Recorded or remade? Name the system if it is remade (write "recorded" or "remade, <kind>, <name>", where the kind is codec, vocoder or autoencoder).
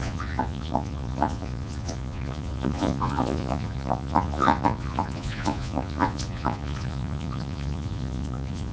remade, vocoder, Vocos